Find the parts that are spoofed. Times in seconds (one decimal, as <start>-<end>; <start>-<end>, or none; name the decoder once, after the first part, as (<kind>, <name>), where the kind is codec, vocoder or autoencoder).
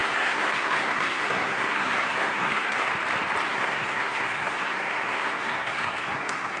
0.0-2.9 (codec, SNAC); 3.5-6.6